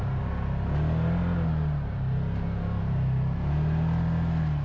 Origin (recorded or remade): recorded